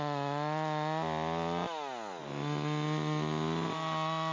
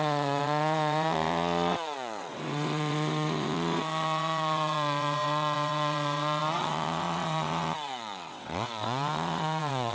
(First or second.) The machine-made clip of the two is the second